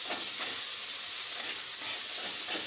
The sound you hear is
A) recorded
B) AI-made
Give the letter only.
A